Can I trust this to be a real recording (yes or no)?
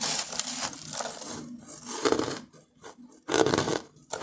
no